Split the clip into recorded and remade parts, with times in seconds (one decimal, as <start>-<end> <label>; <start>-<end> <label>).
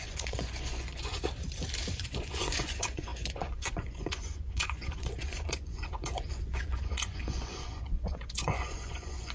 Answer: 0.0-1.1 remade; 1.1-1.9 recorded; 1.9-9.3 remade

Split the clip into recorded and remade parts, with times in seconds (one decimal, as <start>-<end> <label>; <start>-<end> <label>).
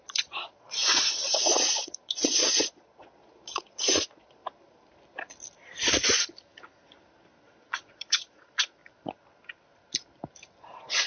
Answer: 0.0-4.4 remade; 4.4-7.4 recorded; 7.4-8.8 remade; 8.8-10.6 recorded; 10.6-11.1 remade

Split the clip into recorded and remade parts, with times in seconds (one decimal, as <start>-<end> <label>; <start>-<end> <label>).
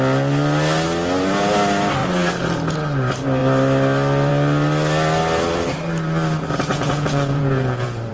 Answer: 0.0-6.7 recorded; 6.7-8.1 remade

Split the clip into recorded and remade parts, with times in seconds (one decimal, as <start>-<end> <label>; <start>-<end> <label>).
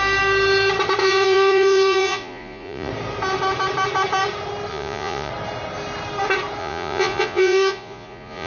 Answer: 0.0-1.0 recorded; 1.0-2.9 remade; 2.9-4.7 recorded; 4.7-5.3 remade; 5.3-6.6 recorded; 6.6-8.5 remade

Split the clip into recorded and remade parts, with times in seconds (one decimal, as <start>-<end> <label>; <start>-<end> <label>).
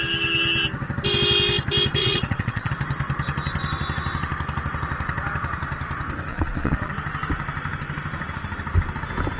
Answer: 0.0-2.0 recorded; 2.0-2.7 remade; 2.7-6.3 recorded; 6.3-6.9 remade; 6.9-9.4 recorded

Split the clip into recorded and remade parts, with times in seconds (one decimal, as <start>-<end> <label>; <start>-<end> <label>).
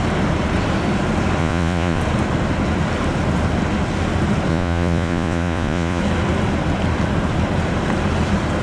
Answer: 0.0-1.4 recorded; 1.4-2.0 remade; 2.0-4.5 recorded; 4.5-6.0 remade; 6.0-8.6 recorded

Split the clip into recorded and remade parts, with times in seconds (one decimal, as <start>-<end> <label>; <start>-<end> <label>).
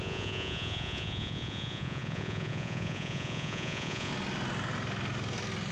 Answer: 0.0-4.1 remade; 4.1-5.7 recorded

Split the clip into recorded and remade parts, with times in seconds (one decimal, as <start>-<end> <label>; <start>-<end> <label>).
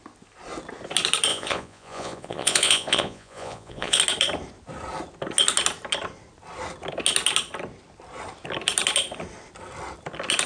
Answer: 0.0-1.3 recorded; 1.3-4.0 remade; 4.0-10.5 recorded